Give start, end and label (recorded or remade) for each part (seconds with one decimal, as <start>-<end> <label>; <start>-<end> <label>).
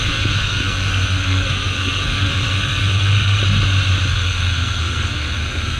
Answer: 0.0-3.4 remade; 3.4-4.1 recorded; 4.1-5.8 remade